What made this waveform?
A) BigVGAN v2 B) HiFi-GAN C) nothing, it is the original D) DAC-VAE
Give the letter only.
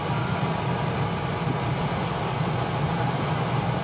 C